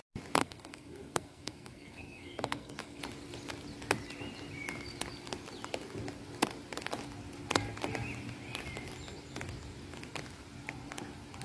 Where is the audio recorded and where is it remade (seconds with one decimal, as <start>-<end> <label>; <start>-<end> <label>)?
0.0-0.4 recorded; 0.4-3.0 remade; 3.0-11.4 recorded